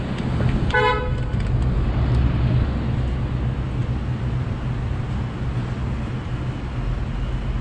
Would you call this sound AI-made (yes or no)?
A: no